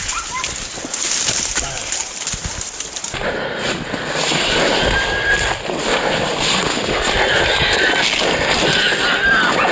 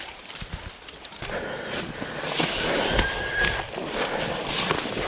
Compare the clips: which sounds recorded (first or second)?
first